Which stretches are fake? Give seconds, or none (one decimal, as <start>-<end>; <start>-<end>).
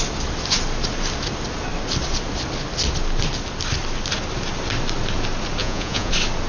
5.6-6.1